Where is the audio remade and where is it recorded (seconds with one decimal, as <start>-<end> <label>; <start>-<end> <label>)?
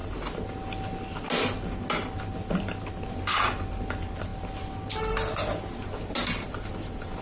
0.0-7.2 recorded